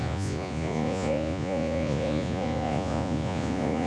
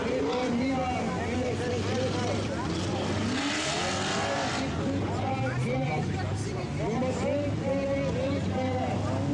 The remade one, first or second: first